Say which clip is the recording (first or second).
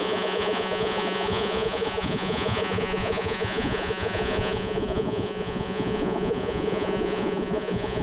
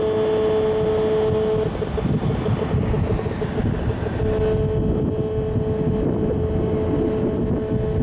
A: second